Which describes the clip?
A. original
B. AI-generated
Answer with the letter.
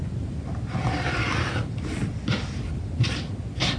A